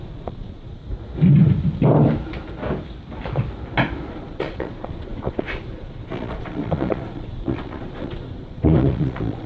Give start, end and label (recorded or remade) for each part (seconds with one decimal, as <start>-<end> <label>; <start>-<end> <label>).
0.0-0.8 remade; 0.8-4.1 recorded; 4.1-9.5 remade